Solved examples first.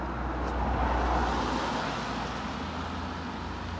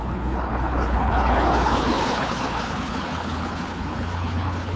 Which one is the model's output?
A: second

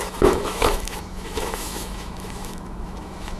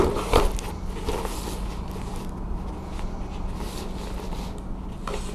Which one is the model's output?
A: first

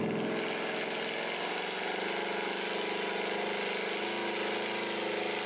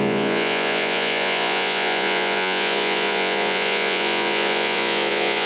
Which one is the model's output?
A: second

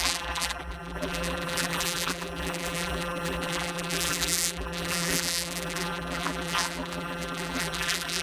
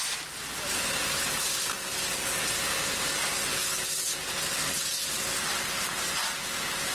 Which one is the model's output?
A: first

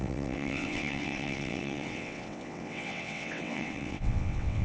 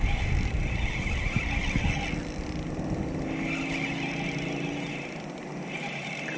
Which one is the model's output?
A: first